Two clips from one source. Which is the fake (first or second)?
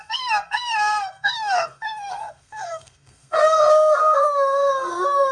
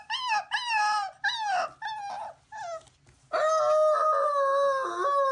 first